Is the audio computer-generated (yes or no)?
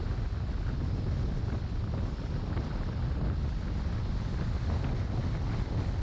no